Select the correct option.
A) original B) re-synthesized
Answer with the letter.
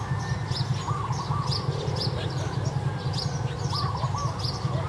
A